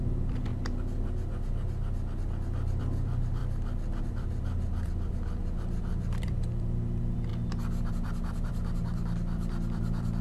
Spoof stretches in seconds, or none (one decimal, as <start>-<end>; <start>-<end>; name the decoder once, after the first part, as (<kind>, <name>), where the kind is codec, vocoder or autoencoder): 0.0-0.5 (vocoder, BigVGAN v2); 2.8-3.4; 4.0-7.3; 7.9-10.2